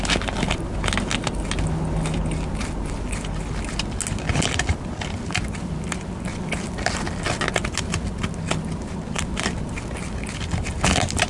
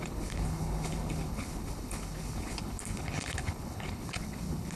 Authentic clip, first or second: first